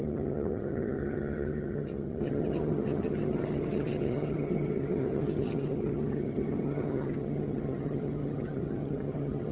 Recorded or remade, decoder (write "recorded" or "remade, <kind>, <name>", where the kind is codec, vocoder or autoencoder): remade, vocoder, HiFi-GAN